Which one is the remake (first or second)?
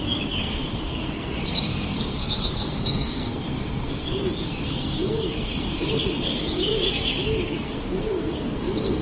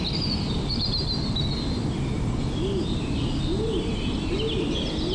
first